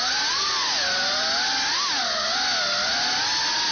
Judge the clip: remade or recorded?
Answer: recorded